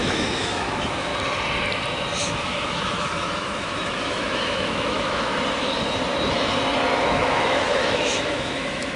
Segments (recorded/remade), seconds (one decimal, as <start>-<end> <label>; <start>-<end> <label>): 0.0-1.1 remade; 1.1-2.2 recorded; 2.2-5.3 remade; 5.3-7.0 recorded; 7.0-9.0 remade